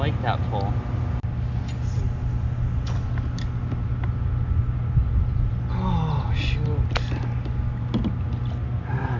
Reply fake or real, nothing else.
real